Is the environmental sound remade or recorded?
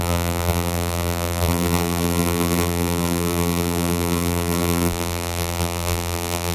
remade